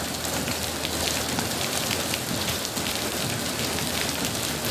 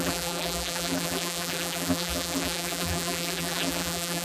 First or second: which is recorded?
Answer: first